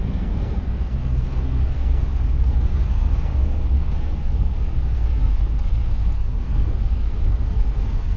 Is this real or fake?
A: fake